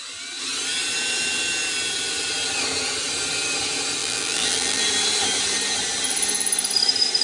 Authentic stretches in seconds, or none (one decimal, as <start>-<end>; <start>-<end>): 0.0-4.0; 4.8-7.2